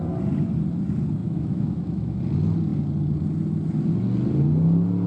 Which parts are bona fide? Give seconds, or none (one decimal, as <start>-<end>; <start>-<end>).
0.0-1.2; 2.2-5.1